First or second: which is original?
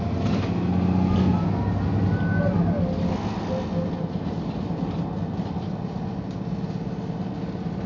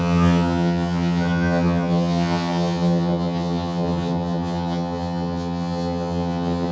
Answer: first